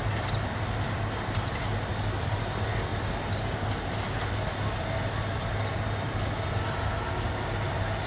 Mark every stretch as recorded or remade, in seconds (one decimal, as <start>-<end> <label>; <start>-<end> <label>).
0.0-8.1 recorded